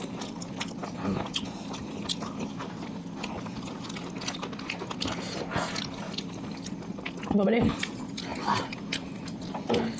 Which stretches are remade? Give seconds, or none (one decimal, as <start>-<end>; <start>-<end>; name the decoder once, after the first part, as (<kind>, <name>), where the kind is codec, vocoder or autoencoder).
none

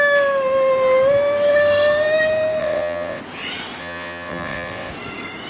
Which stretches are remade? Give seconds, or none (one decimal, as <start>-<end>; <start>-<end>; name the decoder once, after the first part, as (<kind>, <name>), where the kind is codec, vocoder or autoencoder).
2.6-3.2 (vocoder, WaveNeXt); 3.8-4.9

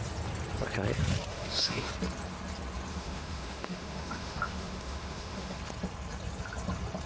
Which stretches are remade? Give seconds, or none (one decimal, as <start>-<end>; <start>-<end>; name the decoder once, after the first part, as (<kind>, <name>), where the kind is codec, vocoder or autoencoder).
1.3-1.9 (autoencoder, DAC-VAE); 2.9-5.6

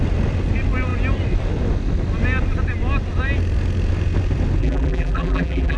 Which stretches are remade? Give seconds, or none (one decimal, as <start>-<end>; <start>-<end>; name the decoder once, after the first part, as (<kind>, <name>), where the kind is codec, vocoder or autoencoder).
4.6-5.8 (vocoder, BigVGAN v2)

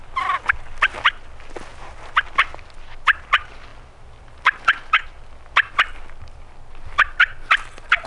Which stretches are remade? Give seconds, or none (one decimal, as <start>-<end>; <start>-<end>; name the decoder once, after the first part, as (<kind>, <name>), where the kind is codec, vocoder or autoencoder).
none

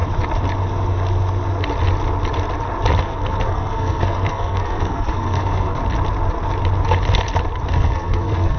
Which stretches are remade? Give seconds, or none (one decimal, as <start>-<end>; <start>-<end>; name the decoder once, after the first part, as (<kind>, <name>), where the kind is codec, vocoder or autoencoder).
3.0-5.8 (codec, SNAC); 7.7-8.6